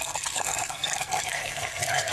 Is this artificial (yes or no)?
yes